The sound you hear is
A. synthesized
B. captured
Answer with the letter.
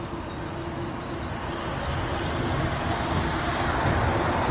B